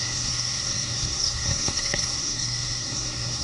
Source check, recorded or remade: remade